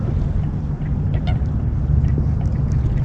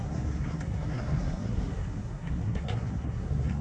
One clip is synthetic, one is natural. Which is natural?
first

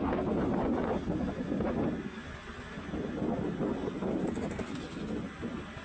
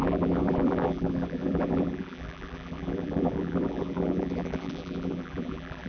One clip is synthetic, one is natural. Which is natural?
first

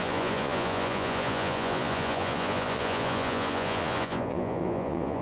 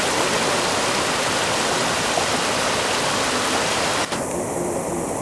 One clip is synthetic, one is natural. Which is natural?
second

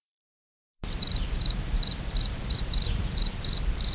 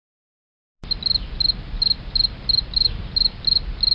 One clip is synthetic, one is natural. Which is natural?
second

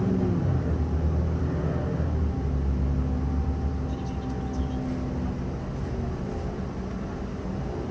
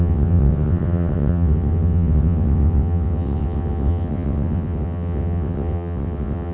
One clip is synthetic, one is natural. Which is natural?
first